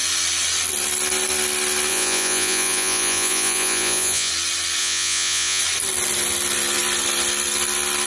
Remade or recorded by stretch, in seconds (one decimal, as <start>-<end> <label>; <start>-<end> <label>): 0.0-1.9 recorded; 1.9-4.3 remade; 4.3-4.8 recorded; 4.8-5.6 remade; 5.6-8.1 recorded